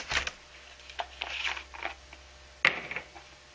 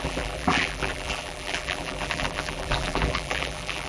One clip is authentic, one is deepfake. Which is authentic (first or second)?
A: first